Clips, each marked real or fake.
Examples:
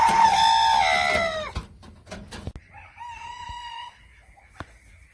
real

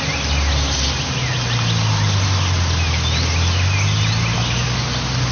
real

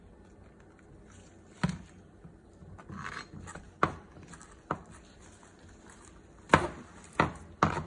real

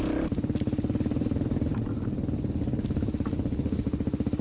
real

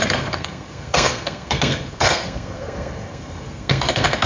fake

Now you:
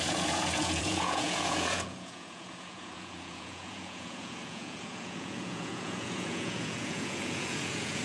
fake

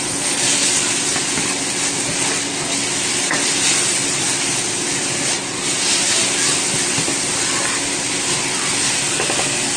real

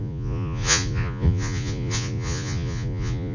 fake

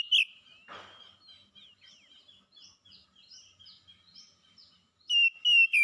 real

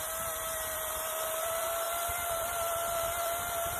fake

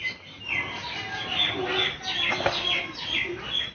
real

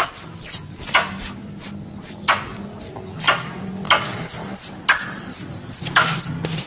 real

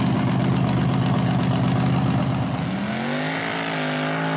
real